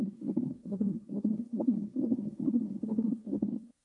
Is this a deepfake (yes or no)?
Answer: yes